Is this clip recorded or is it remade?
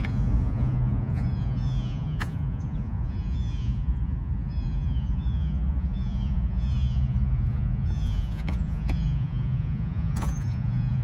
remade